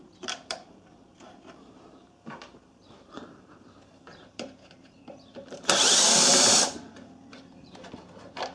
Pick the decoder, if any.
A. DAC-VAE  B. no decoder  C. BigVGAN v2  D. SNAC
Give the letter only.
C